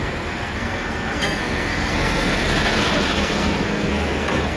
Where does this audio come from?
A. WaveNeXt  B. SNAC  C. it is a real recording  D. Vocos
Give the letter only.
B